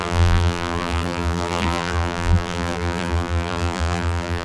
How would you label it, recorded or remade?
remade